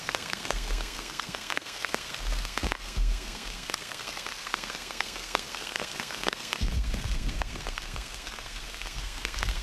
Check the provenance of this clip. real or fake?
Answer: fake